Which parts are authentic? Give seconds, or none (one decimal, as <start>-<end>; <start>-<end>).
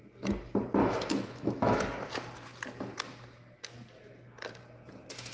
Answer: 0.0-0.8; 1.8-5.3